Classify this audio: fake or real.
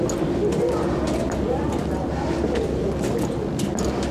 real